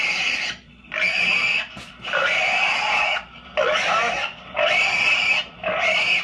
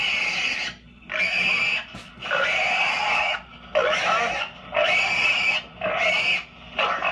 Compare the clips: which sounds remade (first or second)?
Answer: first